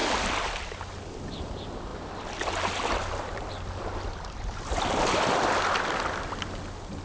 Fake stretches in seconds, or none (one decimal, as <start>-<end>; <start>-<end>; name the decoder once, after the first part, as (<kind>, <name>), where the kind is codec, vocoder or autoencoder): none